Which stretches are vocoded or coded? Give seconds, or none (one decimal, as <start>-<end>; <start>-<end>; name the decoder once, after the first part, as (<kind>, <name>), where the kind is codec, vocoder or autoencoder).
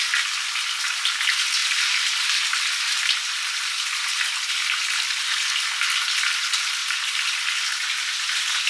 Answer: none